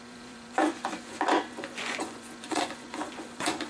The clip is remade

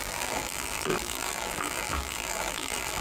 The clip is remade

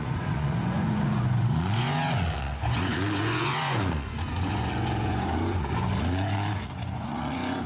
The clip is remade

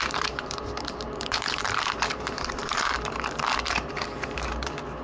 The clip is remade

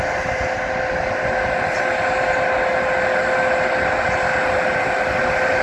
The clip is recorded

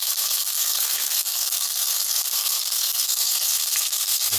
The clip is remade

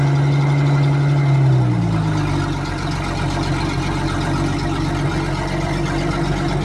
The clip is recorded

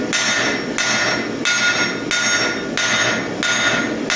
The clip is recorded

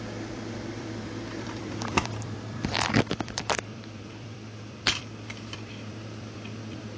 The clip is remade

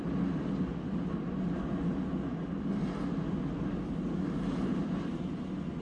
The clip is recorded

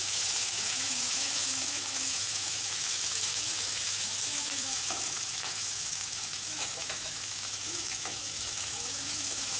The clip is remade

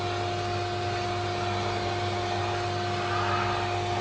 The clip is recorded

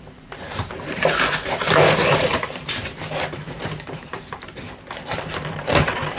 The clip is remade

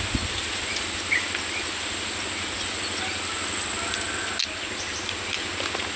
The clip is recorded